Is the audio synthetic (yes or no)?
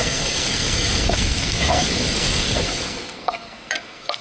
yes